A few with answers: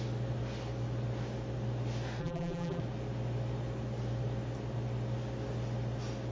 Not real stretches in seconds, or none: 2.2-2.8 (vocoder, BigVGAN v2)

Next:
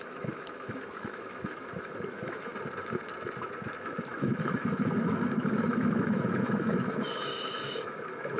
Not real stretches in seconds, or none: 0.0-2.5 (autoencoder, DAC-VAE); 3.8-8.4

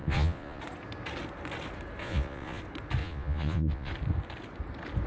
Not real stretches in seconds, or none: 0.0-0.6 (vocoder, Vocos); 2.0-2.6; 3.0-3.9

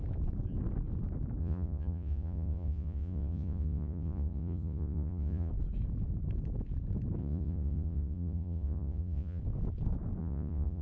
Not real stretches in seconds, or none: 1.4-5.5 (vocoder, Vocos); 7.2-9.4; 10.2-10.8